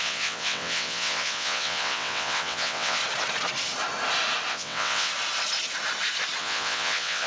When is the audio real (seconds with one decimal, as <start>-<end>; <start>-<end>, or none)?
3.0-4.5; 5.1-6.4